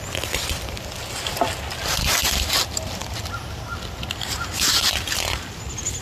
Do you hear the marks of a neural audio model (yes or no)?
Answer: no